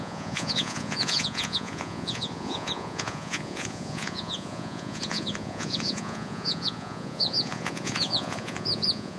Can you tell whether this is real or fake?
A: fake